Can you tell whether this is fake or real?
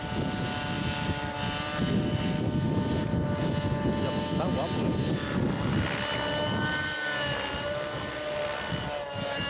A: real